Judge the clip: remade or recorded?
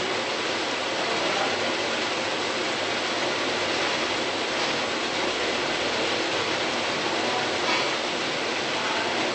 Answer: recorded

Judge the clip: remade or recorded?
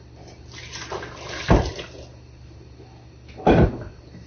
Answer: recorded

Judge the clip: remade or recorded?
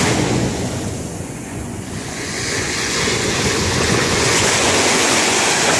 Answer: remade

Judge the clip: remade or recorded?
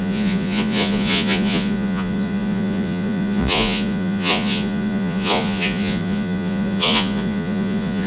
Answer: remade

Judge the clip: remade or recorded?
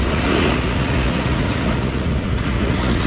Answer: remade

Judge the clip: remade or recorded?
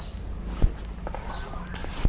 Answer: recorded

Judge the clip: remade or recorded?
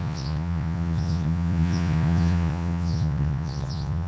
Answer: remade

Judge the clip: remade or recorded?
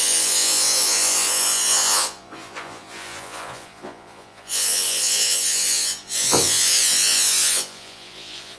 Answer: remade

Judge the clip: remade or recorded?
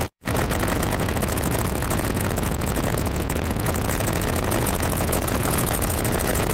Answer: remade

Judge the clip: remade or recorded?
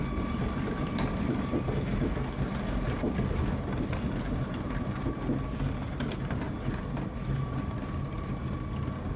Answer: recorded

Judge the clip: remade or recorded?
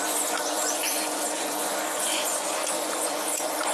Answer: remade